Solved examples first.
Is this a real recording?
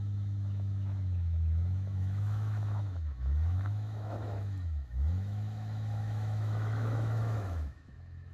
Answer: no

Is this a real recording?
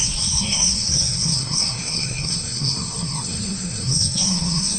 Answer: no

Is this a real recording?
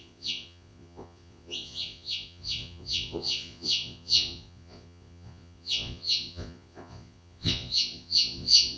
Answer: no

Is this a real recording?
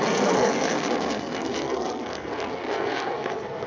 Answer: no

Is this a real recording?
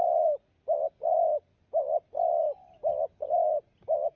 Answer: yes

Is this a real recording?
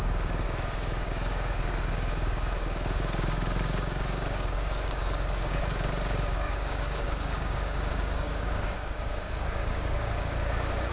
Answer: no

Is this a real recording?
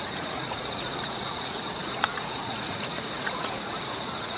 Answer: no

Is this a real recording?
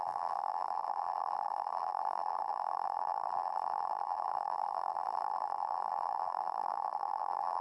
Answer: no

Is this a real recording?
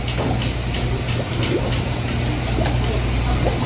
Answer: yes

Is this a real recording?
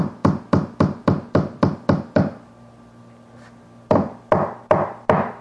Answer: yes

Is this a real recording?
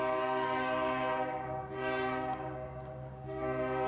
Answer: no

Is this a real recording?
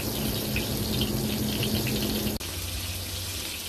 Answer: yes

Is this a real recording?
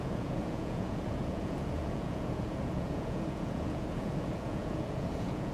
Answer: no